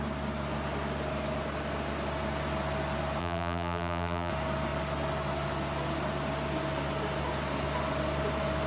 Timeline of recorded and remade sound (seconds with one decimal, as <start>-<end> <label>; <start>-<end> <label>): 0.0-3.2 recorded; 3.2-4.3 remade; 4.3-8.7 recorded

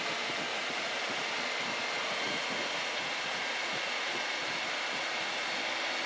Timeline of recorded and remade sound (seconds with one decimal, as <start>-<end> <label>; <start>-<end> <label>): 0.0-0.5 recorded; 0.5-1.3 remade; 1.3-2.0 recorded; 2.0-5.5 remade; 5.5-6.1 recorded